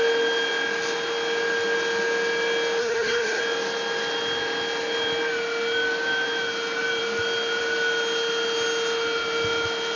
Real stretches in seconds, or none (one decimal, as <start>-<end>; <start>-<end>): 0.0-2.8; 3.4-10.0